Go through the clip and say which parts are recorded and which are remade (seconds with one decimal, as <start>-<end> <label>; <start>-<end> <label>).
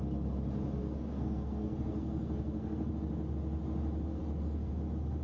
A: 0.0-0.8 recorded; 0.8-2.9 remade; 2.9-4.1 recorded; 4.1-4.7 remade; 4.7-5.2 recorded